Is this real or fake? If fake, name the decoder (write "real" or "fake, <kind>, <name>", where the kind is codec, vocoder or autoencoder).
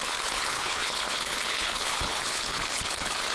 fake, codec, HILCodec